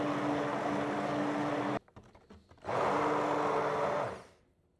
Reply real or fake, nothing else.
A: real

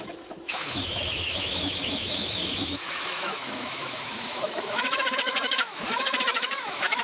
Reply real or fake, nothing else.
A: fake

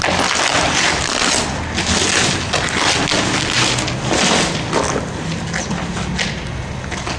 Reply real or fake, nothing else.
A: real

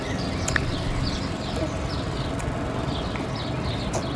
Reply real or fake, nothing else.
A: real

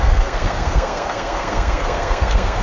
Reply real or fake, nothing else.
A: fake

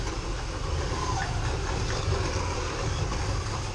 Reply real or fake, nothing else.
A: real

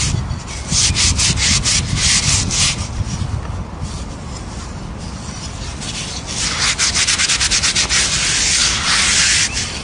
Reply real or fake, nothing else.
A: real